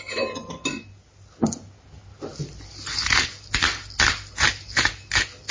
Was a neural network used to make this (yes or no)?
no